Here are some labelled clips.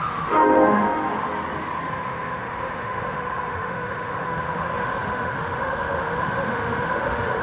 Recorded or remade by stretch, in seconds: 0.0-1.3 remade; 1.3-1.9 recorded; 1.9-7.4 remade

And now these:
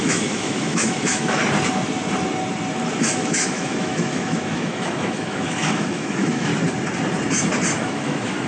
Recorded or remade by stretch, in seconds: 0.0-1.4 remade; 1.4-3.0 recorded; 3.0-6.5 remade; 6.5-7.8 recorded; 7.8-8.5 remade

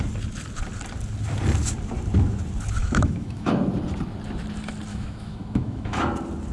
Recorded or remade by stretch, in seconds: 0.0-2.8 recorded; 2.8-3.5 remade; 3.5-4.9 recorded; 4.9-6.0 remade; 6.0-6.5 recorded

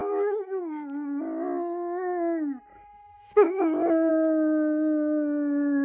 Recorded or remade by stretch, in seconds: 0.0-0.6 remade; 0.6-2.7 recorded; 2.7-4.1 remade; 4.1-5.8 recorded

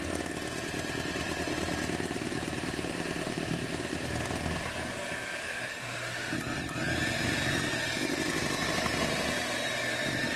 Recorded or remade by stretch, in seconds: 0.0-5.4 recorded; 5.4-6.3 remade; 6.3-10.4 recorded

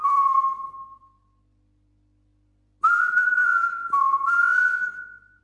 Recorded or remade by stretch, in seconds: 0.0-5.4 recorded

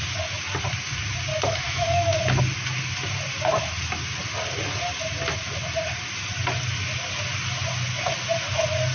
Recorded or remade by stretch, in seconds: 0.0-1.3 recorded; 1.3-2.4 remade; 2.4-8.9 recorded